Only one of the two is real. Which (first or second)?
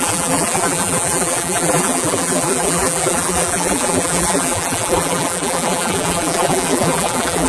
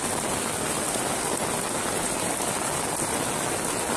second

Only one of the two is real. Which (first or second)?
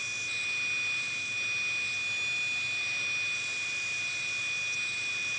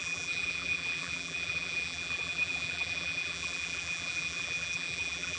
first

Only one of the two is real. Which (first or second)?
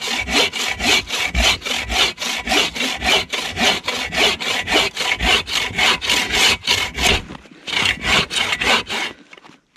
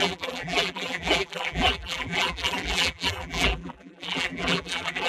first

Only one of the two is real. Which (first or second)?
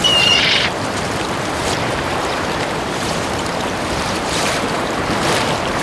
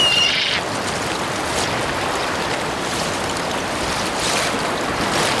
second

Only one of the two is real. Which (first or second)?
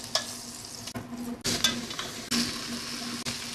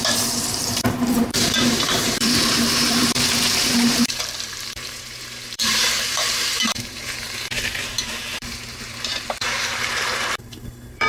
first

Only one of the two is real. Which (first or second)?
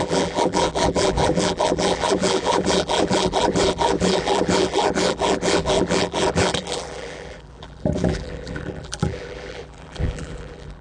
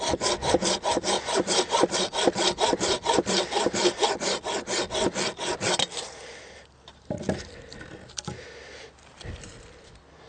second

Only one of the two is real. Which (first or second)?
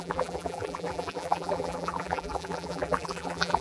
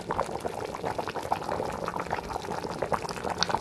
second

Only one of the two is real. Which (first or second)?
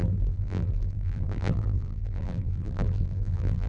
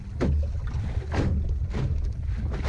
second